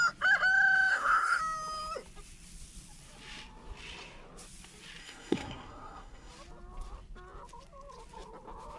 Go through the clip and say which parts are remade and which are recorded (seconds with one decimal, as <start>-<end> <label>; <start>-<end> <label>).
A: 0.0-0.9 recorded; 0.9-1.4 remade; 1.4-5.0 recorded; 5.0-6.3 remade; 6.3-8.8 recorded